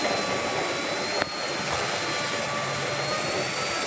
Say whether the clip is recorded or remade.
recorded